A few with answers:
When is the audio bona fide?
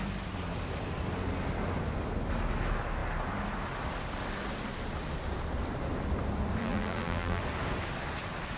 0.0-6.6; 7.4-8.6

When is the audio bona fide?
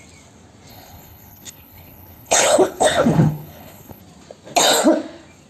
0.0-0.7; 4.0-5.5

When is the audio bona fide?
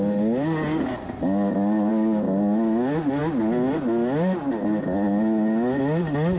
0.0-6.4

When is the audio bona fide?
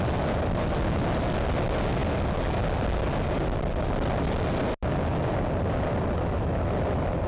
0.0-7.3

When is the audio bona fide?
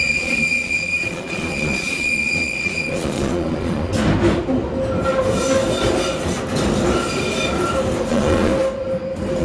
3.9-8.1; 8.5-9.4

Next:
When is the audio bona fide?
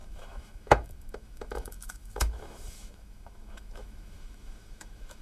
none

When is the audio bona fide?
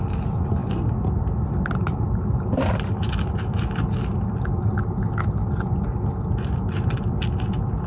0.0-7.9